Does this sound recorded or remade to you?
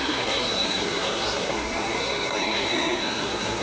remade